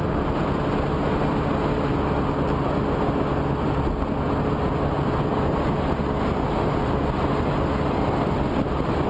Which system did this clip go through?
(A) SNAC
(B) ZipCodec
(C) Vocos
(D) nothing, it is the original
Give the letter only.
D